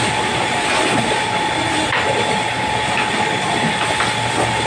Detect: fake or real real